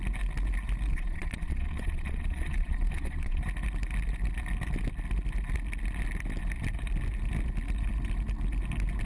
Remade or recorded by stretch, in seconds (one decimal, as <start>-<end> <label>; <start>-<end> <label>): 0.0-0.9 recorded; 0.9-3.4 remade; 3.4-9.1 recorded